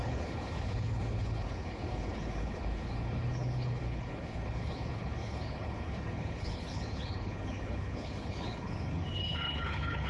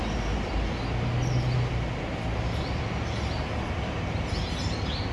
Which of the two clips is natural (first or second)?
second